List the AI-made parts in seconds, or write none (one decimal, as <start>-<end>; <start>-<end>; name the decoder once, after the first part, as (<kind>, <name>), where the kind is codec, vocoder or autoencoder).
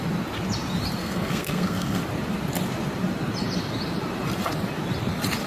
1.0-2.0 (codec, SNAC)